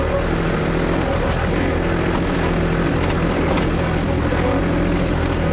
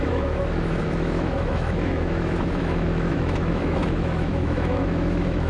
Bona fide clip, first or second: first